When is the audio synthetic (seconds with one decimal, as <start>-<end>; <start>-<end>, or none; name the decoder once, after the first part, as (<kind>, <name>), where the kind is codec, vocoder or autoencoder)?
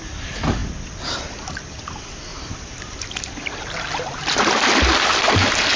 2.3-4.6 (vocoder, BigVGAN v2)